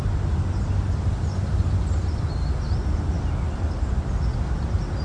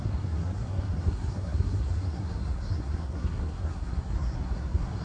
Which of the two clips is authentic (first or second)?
first